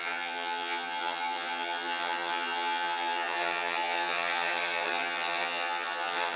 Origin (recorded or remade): remade